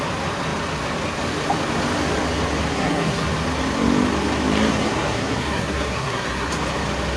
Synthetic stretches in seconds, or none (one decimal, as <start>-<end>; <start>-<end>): 2.7-3.3; 4.7-6.5